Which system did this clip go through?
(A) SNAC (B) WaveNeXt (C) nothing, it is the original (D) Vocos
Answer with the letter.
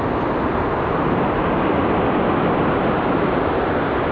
C